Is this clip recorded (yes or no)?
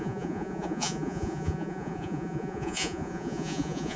no